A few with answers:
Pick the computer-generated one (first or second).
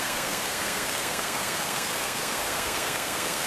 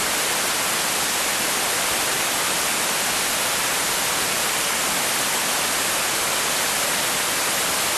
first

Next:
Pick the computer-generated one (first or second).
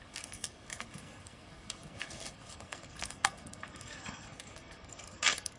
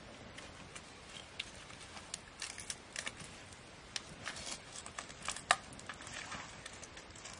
first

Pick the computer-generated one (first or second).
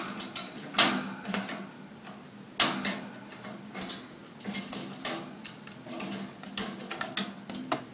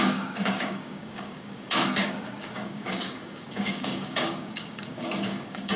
second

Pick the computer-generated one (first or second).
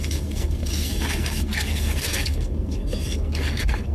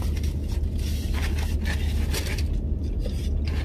first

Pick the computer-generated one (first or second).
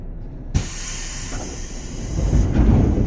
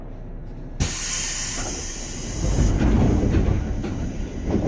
first